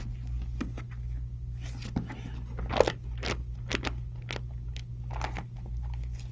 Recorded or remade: recorded